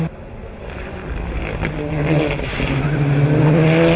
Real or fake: real